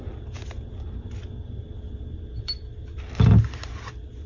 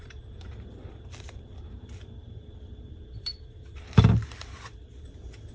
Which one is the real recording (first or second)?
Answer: first